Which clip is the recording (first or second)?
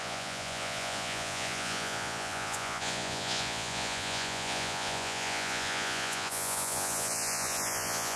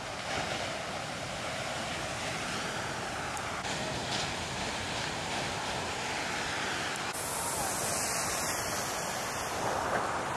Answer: second